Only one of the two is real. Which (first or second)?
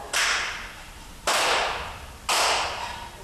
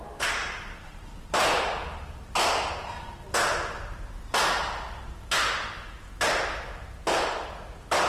second